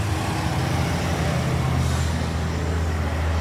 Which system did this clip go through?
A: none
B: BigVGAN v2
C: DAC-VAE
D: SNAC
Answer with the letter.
A